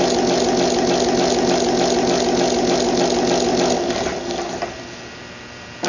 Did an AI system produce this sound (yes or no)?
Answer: no